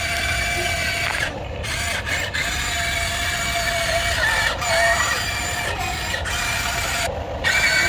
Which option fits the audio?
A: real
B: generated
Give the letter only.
A